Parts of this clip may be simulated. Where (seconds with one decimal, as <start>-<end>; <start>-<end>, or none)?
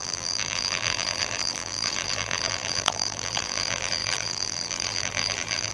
0.0-5.7